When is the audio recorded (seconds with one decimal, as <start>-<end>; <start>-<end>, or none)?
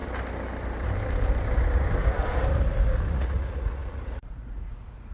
0.0-3.1